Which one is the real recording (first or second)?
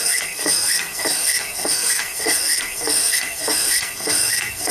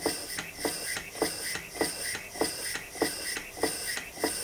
second